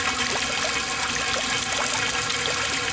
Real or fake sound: real